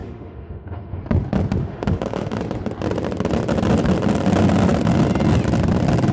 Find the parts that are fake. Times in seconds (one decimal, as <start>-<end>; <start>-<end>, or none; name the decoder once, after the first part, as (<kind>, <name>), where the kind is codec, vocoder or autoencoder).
0.0-1.0 (autoencoder, DAC-VAE); 1.6-2.4